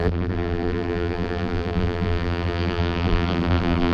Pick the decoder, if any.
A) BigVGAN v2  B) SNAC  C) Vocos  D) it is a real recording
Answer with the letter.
A